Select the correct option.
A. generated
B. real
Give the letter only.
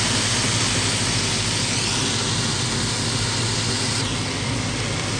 B